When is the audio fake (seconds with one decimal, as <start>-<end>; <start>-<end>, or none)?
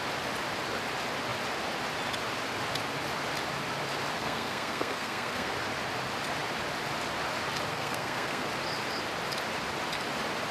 4.2-5.5; 7.7-8.5